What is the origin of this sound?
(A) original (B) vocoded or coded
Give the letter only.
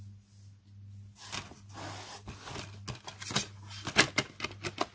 A